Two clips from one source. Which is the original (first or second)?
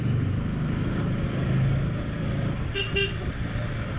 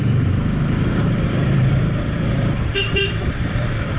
first